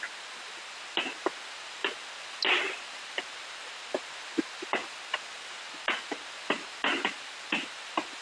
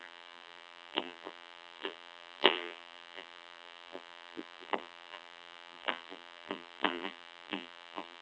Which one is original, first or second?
first